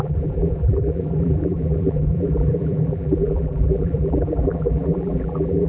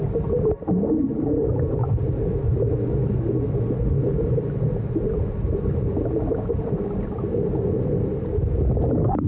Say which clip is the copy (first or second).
first